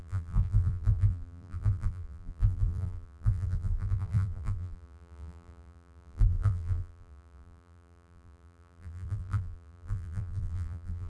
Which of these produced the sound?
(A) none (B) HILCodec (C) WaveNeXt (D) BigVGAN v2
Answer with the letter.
D